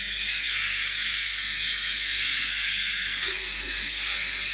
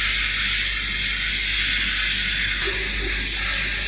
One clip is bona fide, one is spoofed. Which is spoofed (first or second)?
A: first